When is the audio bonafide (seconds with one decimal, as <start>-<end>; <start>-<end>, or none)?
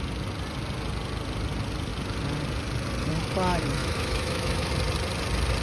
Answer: 0.0-3.8; 4.7-5.6